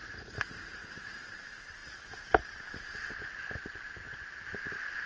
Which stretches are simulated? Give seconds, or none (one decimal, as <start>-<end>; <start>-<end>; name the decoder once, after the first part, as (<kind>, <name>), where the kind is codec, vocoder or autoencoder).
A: 0.0-1.2 (vocoder, Vocos)